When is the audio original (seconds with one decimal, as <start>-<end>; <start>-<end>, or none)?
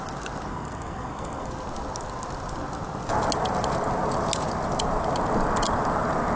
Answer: 0.0-0.5; 1.5-6.4